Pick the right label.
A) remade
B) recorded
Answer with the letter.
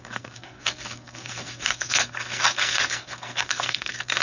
A